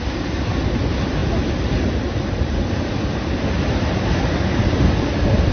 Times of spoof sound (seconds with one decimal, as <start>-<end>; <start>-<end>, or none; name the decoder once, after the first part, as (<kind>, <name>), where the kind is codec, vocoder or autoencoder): none